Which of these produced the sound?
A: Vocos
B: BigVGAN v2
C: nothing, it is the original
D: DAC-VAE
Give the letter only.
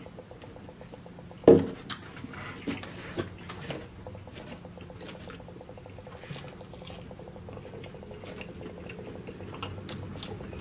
C